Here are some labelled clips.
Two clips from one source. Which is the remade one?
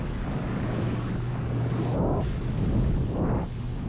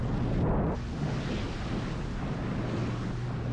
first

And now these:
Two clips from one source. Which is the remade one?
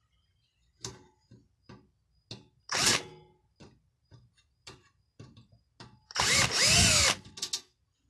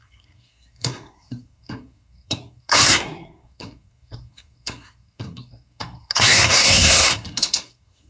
second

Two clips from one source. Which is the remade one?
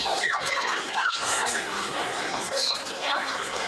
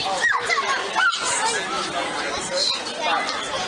first